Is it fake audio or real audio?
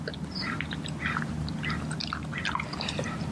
real